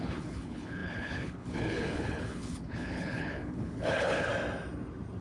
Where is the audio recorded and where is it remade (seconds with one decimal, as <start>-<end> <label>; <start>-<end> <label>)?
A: 0.0-4.3 remade; 4.3-5.2 recorded